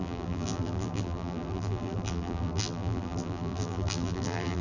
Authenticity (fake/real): fake